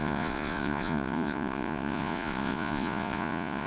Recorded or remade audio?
remade